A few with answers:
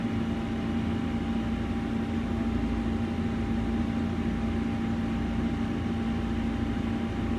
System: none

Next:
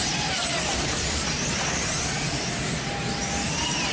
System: vocoder, BigVGAN v2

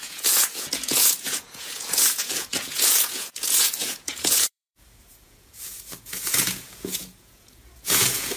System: vocoder, Vocos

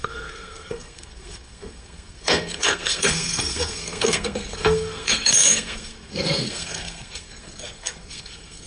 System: codec, SNAC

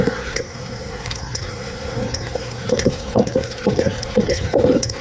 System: codec, SNAC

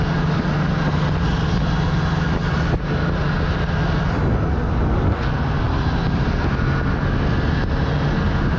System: none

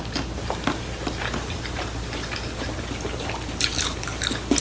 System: none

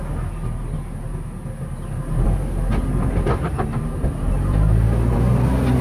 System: none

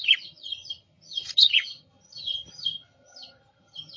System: vocoder, HiFi-GAN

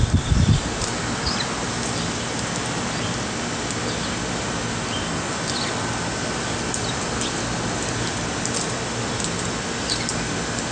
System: none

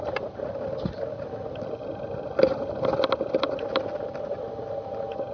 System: none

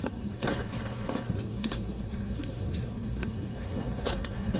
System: codec, SNAC